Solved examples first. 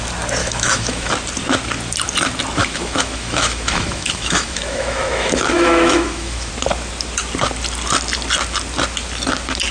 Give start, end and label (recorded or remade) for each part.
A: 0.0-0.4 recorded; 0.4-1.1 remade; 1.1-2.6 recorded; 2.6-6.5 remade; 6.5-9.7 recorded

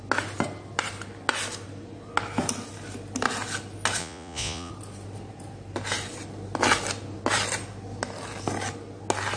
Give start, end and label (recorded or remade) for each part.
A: 0.0-4.0 recorded; 4.0-4.7 remade; 4.7-9.4 recorded

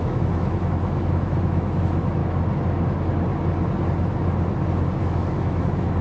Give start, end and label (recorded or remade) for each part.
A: 0.0-2.2 remade; 2.2-5.0 recorded; 5.0-6.0 remade